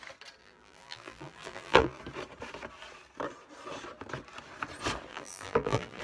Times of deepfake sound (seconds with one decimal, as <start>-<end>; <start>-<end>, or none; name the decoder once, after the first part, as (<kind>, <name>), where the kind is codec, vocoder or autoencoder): 0.4-2.0 (vocoder, BigVGAN v2); 5.1-6.0